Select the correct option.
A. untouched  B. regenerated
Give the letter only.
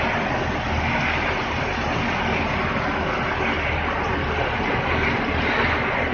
A